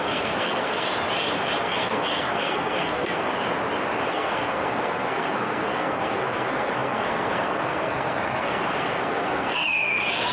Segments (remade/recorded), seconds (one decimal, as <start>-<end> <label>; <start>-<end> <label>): 0.0-0.9 remade; 0.9-1.6 recorded; 1.6-3.3 remade; 3.3-4.1 recorded; 4.1-10.3 remade